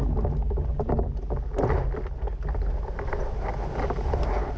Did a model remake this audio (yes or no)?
no